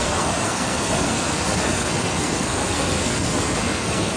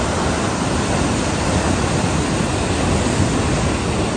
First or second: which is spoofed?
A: first